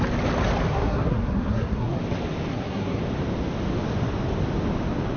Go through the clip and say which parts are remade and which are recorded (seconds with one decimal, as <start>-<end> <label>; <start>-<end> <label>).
0.0-0.7 recorded; 0.7-2.0 remade; 2.0-2.5 recorded; 2.5-3.0 remade; 3.0-5.2 recorded